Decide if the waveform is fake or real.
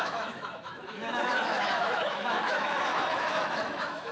fake